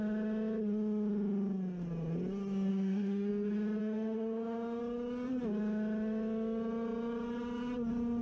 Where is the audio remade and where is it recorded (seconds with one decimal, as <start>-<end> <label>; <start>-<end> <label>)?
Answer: 0.0-2.7 recorded; 2.7-3.3 remade; 3.3-3.8 recorded; 3.8-4.8 remade; 4.8-8.2 recorded